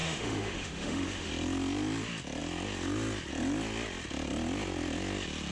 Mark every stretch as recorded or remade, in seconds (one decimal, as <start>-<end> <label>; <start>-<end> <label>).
0.0-1.3 remade; 1.3-5.5 recorded